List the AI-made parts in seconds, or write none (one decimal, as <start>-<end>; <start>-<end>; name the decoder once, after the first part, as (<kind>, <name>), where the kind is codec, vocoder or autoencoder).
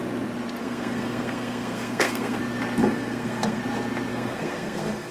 0.6-2.4 (codec, SNAC); 2.8-3.6; 4.1-5.1